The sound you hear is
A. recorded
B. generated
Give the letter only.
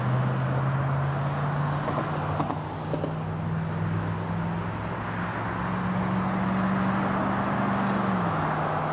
A